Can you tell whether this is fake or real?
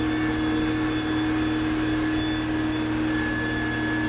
real